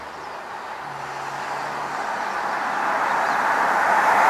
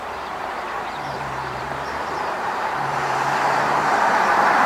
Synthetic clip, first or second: second